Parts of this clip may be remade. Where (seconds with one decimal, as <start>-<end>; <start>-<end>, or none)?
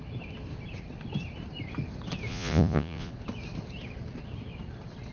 2.3-3.1